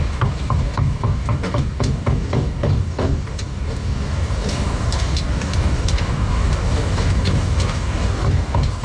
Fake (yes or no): yes